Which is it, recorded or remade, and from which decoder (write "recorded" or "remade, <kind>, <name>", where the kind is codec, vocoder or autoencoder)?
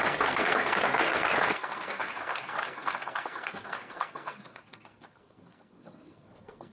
remade, codec, SNAC